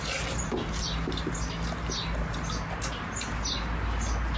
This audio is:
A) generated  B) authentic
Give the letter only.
B